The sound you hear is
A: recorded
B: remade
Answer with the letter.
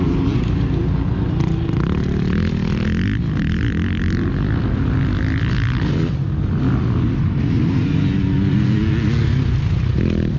A